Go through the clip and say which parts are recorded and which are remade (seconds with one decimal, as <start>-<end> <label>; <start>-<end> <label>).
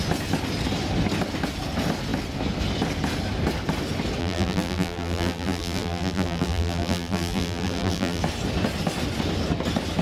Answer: 0.0-4.2 recorded; 4.2-8.2 remade; 8.2-10.0 recorded